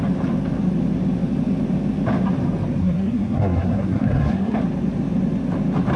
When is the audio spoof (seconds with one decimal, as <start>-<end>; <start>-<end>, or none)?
2.8-4.6